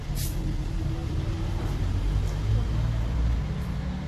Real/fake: real